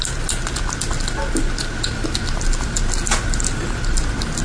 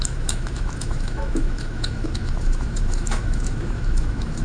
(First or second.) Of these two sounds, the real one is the first